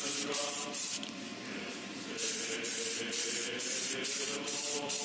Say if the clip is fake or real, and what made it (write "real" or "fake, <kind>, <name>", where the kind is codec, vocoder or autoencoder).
fake, vocoder, BigVGAN v2